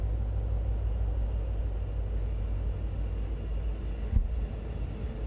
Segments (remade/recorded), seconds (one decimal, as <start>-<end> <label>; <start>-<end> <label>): 0.0-5.3 recorded